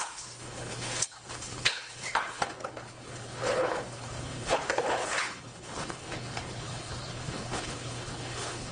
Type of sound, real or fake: fake